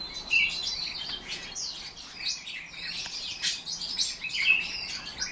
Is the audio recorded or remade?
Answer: recorded